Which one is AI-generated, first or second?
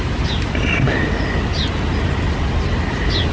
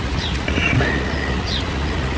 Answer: second